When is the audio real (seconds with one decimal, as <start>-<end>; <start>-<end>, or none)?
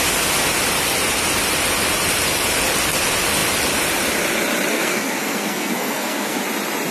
0.0-4.7; 6.4-6.9